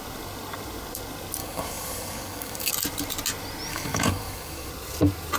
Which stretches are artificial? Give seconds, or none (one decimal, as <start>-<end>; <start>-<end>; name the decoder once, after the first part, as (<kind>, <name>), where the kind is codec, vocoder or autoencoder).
1.4-2.7 (codec, DAC); 3.7-4.7